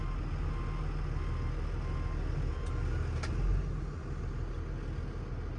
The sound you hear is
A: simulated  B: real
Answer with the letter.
B